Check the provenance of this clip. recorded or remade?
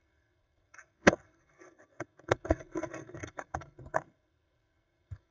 remade